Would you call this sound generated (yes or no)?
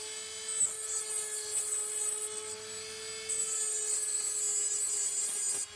no